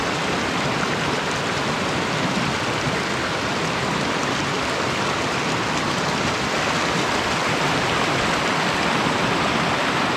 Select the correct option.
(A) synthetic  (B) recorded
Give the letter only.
B